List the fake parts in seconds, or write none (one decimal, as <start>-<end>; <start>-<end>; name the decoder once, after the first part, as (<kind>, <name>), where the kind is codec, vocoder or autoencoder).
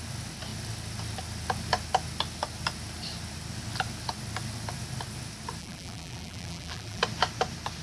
5.6-7.0 (vocoder, BigVGAN v2)